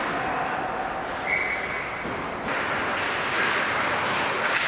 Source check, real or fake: real